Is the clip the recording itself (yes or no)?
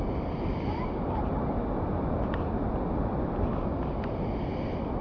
yes